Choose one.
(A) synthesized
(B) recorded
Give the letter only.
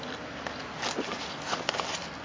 B